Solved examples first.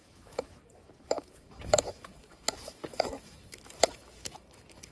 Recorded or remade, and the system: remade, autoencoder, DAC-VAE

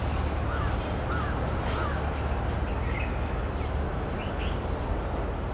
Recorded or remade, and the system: recorded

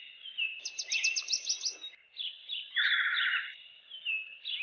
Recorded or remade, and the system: recorded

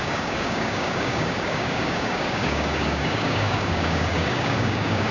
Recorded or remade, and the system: remade, codec, DAC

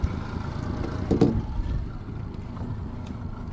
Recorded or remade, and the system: recorded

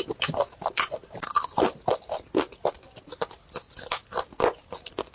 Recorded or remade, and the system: recorded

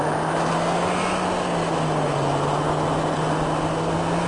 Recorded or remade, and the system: recorded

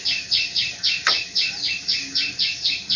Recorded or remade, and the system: remade, vocoder, BigVGAN v2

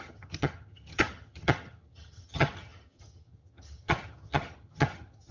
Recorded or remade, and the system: remade, vocoder, HiFi-GAN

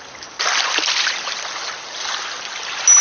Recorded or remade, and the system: recorded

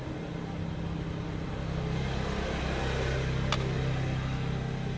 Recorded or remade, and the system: recorded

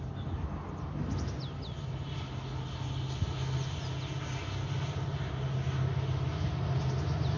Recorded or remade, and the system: recorded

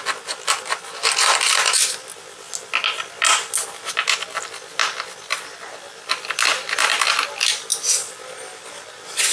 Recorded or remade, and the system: recorded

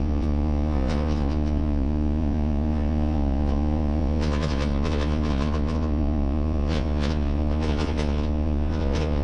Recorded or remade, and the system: remade, vocoder, Vocos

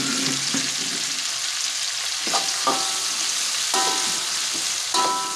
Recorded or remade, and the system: recorded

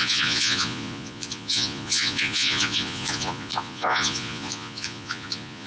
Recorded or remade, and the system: remade, vocoder, Vocos